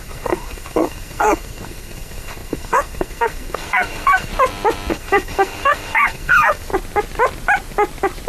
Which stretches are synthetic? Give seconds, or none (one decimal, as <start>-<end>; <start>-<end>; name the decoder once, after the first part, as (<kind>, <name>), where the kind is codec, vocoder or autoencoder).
0.0-4.3 (codec, SNAC); 4.9-6.7